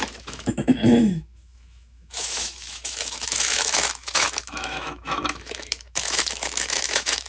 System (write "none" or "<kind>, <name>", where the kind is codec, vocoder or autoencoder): autoencoder, DAC-VAE